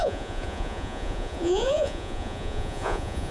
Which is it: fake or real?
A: fake